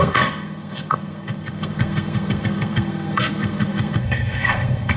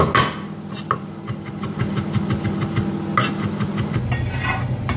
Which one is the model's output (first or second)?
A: first